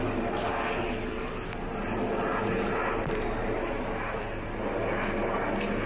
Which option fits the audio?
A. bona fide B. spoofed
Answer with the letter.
A